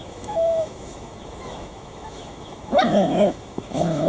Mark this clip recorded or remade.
remade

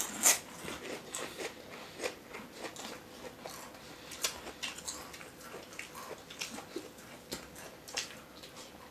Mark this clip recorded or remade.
recorded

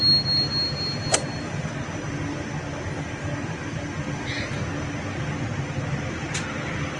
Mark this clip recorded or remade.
recorded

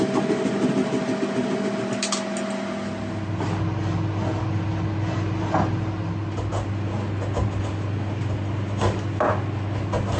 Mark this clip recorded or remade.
recorded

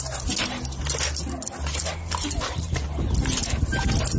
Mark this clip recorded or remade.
recorded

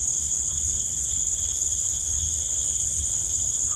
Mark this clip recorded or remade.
remade